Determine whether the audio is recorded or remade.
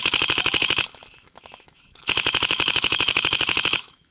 remade